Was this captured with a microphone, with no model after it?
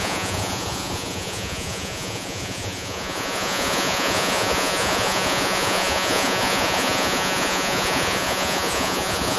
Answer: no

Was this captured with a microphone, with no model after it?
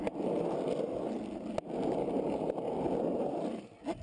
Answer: yes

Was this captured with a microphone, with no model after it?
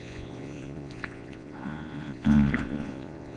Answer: no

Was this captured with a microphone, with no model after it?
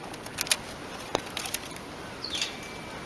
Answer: yes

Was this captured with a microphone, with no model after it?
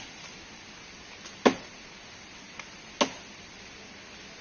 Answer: yes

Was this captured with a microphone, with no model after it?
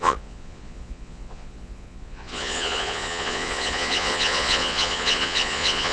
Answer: no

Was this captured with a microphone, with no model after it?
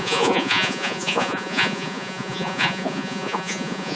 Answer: no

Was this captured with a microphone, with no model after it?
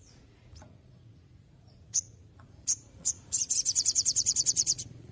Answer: no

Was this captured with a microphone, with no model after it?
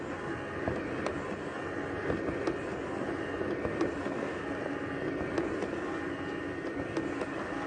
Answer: yes